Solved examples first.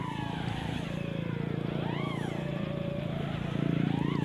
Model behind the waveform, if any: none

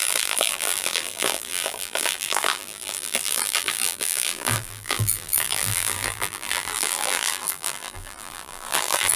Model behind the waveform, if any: vocoder, BigVGAN v2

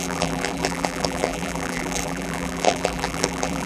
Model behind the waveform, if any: vocoder, BigVGAN v2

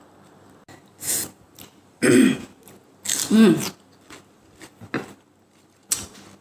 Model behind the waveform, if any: none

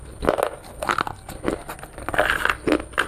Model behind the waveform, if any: none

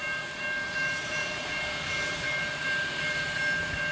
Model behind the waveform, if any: vocoder, BigVGAN v2